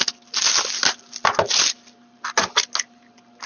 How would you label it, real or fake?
real